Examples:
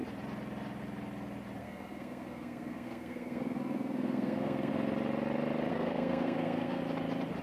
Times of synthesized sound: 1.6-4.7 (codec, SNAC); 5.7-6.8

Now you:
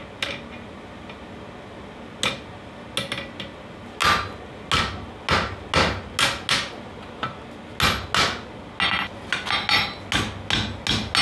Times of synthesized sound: none